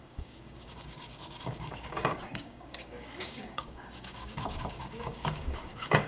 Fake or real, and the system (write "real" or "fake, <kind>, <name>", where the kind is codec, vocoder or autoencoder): fake, codec, DAC